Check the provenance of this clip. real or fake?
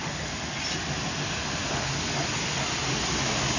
real